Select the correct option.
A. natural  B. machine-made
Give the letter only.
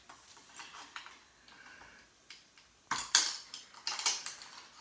A